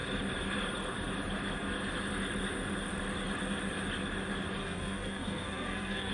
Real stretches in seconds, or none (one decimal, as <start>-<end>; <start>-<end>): 0.0-4.6